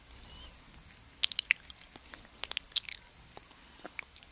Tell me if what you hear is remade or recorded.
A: recorded